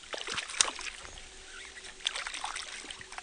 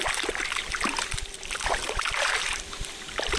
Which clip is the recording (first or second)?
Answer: first